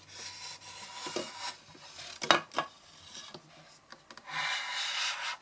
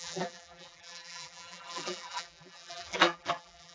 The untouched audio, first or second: first